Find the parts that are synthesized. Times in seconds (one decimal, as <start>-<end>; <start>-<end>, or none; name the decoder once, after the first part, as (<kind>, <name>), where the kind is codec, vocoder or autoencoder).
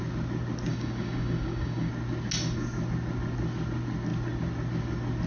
0.7-1.9 (codec, DAC)